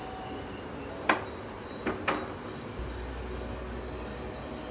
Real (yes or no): yes